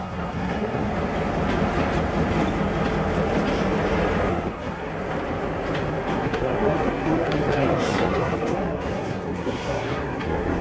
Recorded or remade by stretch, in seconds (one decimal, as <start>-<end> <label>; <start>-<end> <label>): 0.0-0.9 remade; 0.9-4.3 recorded; 4.3-4.9 remade; 4.9-6.1 recorded; 6.1-10.6 remade